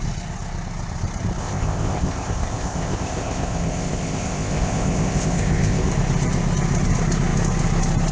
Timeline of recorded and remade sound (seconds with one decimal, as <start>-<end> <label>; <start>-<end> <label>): 0.0-1.4 recorded; 1.4-5.9 remade; 5.9-8.1 recorded